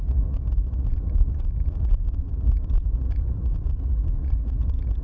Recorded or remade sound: remade